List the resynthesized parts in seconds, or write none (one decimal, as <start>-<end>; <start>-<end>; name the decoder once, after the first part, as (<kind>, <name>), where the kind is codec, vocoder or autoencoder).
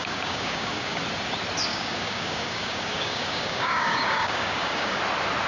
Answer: 0.0-1.0 (codec, DAC); 1.7-5.0